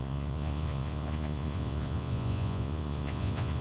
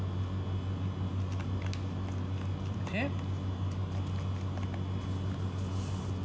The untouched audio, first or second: second